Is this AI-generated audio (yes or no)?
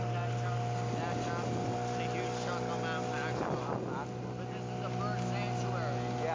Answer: no